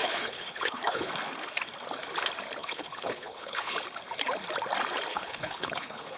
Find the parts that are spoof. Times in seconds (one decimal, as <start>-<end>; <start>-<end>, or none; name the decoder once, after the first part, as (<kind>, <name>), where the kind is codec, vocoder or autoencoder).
0.0-1.1 (codec, HILCodec); 2.6-3.7; 5.1-6.2